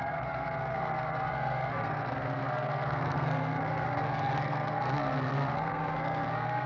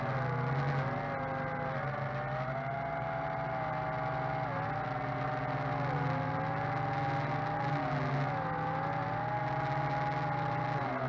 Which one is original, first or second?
second